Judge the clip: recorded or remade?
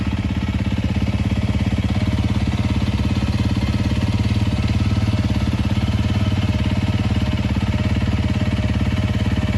recorded